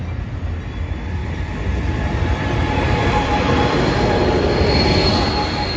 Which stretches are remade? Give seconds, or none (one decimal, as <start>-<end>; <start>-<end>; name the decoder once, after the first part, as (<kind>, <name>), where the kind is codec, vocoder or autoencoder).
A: 1.2-4.7 (vocoder, BigVGAN v2)